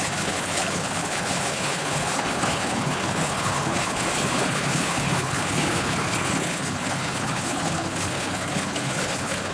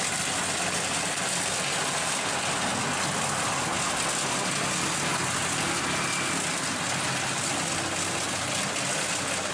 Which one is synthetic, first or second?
first